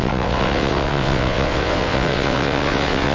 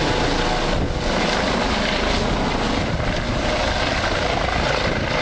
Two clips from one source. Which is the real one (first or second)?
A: second